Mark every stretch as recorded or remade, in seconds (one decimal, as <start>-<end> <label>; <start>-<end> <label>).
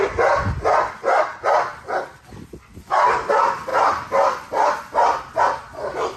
0.0-6.2 recorded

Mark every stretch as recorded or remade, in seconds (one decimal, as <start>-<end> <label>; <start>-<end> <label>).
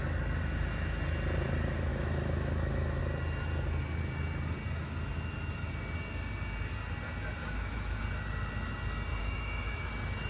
0.0-1.9 recorded; 1.9-3.0 remade; 3.0-7.4 recorded; 7.4-8.0 remade; 8.0-9.2 recorded; 9.2-9.9 remade; 9.9-10.3 recorded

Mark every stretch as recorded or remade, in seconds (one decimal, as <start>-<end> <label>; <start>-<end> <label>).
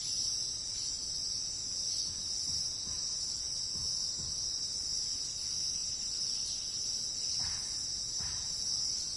0.0-9.2 recorded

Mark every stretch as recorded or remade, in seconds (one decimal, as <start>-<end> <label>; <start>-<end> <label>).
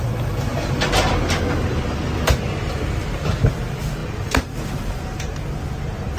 0.0-4.0 recorded; 4.0-5.4 remade; 5.4-6.2 recorded